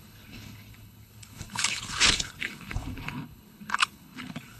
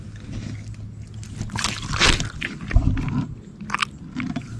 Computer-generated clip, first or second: first